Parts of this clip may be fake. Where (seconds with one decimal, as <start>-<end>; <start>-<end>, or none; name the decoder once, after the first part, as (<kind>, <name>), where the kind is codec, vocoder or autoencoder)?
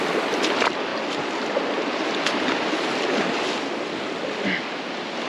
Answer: none